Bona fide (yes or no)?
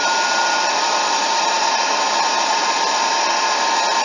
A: yes